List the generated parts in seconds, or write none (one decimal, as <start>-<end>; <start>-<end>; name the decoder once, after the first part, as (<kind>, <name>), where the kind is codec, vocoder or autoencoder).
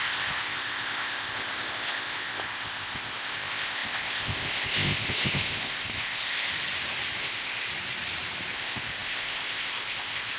0.0-6.5 (codec, ZipCodec); 7.2-7.7; 8.5-10.4